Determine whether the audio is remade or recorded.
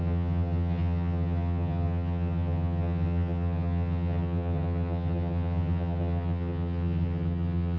remade